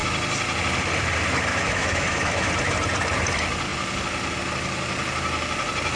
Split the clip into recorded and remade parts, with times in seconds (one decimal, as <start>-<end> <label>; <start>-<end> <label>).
0.0-1.5 recorded; 1.5-2.5 remade; 2.5-6.0 recorded